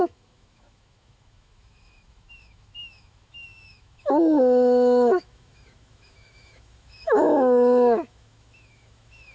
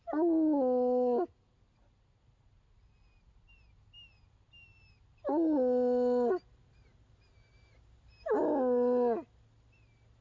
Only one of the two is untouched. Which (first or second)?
second